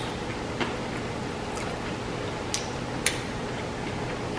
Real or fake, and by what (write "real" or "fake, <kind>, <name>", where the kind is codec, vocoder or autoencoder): real